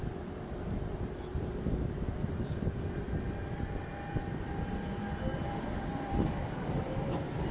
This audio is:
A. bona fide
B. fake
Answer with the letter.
B